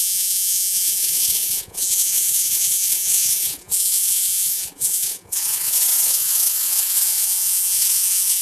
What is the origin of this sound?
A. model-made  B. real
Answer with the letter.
A